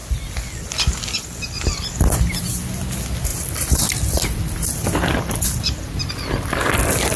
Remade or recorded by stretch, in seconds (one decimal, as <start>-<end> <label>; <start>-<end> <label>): 0.0-7.2 recorded